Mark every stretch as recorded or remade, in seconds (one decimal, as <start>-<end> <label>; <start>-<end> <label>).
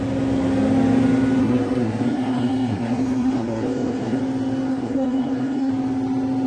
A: 0.0-1.4 recorded; 1.4-4.2 remade; 4.2-4.7 recorded; 4.7-5.7 remade; 5.7-6.5 recorded